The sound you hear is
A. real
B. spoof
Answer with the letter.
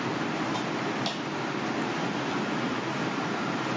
A